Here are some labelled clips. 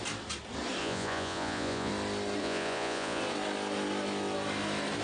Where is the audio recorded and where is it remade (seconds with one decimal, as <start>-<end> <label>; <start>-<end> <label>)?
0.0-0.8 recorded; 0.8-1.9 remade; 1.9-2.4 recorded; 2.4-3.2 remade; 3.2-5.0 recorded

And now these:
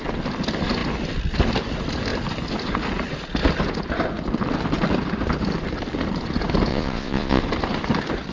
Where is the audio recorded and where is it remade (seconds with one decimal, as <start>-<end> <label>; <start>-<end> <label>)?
0.0-6.7 recorded; 6.7-7.4 remade; 7.4-8.3 recorded

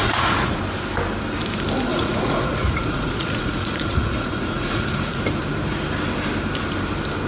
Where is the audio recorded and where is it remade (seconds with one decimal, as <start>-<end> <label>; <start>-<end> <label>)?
0.0-0.6 remade; 0.6-1.9 recorded; 1.9-5.2 remade; 5.2-7.3 recorded